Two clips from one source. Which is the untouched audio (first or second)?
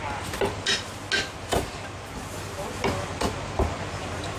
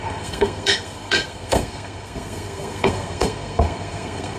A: first